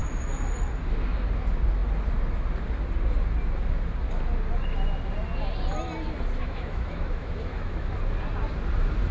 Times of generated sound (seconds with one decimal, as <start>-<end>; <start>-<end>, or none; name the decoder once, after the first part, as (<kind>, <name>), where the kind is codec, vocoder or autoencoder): 6.4-7.9 (autoencoder, DAC-VAE)